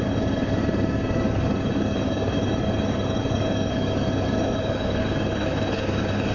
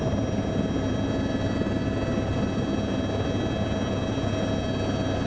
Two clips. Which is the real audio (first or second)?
second